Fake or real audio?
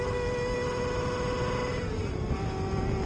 real